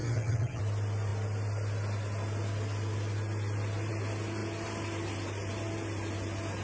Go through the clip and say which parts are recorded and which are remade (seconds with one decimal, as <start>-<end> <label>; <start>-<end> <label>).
0.0-0.6 remade; 0.6-6.6 recorded